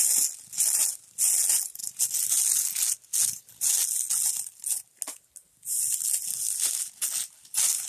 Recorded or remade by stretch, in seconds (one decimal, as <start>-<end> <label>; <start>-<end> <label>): 0.0-7.9 recorded